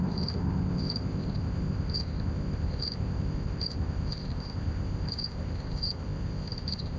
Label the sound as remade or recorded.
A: remade